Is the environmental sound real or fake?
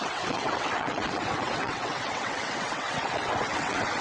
fake